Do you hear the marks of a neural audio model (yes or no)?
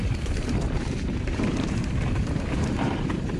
yes